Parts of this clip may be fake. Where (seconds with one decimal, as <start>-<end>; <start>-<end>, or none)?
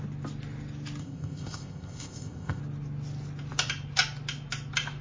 1.0-2.6